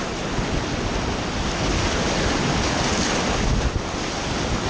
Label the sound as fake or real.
real